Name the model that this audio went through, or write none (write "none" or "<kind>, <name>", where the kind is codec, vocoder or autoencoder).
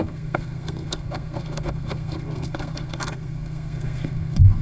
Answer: codec, SNAC